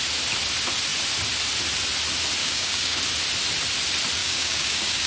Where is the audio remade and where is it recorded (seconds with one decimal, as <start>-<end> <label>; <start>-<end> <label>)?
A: 0.0-2.4 recorded; 2.4-3.0 remade; 3.0-4.2 recorded; 4.2-5.1 remade